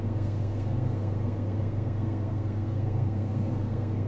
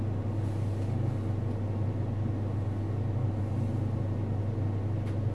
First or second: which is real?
second